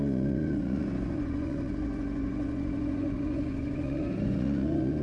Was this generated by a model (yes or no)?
yes